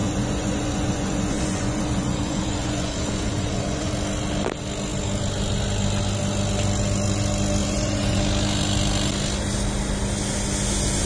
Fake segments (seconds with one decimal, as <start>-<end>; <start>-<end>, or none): 0.0-3.9; 7.6-8.2